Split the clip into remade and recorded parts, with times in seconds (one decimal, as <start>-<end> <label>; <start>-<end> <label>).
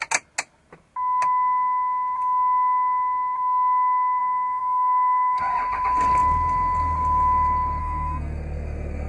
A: 0.0-4.2 recorded; 4.2-5.4 remade; 5.4-7.8 recorded; 7.8-9.1 remade